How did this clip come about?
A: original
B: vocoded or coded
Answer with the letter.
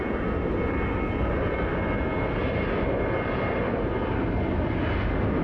A